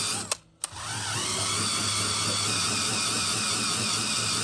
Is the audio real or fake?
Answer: real